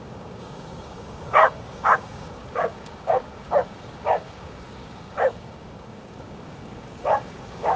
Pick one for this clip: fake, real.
fake